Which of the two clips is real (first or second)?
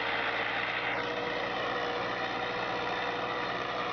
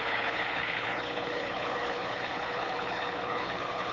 first